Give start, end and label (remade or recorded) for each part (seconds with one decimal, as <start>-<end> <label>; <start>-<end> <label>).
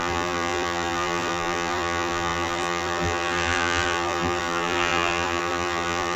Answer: 0.0-6.2 remade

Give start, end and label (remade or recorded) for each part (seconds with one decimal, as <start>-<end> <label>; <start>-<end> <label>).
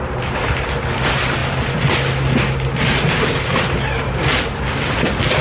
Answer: 0.0-5.4 recorded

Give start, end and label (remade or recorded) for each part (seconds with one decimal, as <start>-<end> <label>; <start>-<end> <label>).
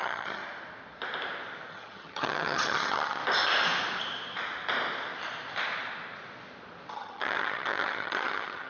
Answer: 0.0-0.4 remade; 0.4-1.7 recorded; 1.7-3.2 remade; 3.2-6.9 recorded; 6.9-8.7 remade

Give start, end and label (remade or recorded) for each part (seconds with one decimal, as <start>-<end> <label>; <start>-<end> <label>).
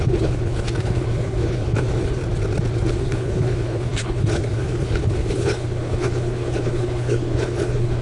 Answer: 0.0-2.2 remade; 2.2-2.8 recorded; 2.8-8.0 remade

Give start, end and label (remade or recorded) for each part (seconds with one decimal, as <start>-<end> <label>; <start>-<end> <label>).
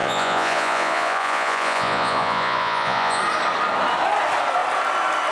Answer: 0.0-3.2 remade; 3.2-5.3 recorded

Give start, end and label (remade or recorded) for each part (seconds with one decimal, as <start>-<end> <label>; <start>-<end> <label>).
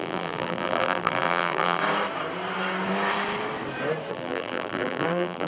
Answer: 0.0-1.8 remade; 1.8-4.1 recorded; 4.1-5.5 remade